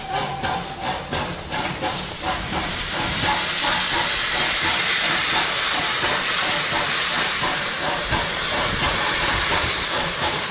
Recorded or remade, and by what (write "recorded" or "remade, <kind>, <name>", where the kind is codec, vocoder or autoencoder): remade, vocoder, BigVGAN v2